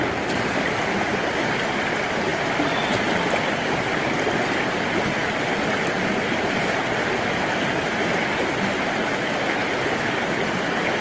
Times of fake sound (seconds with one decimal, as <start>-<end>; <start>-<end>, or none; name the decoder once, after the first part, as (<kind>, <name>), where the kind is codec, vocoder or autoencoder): 2.3-2.9 (vocoder, BigVGAN v2)